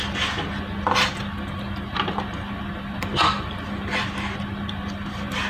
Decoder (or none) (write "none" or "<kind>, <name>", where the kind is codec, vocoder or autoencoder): none